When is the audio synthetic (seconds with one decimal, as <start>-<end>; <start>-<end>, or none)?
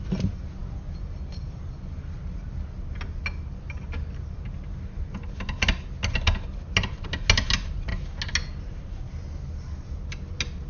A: none